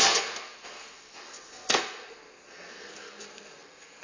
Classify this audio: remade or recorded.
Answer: remade